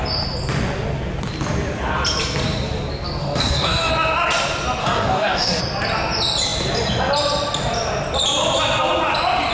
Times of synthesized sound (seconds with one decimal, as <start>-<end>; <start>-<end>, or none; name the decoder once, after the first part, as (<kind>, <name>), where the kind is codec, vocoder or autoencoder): 3.2-3.9 (codec, DAC); 4.8-5.6